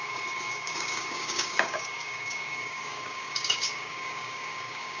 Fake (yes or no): yes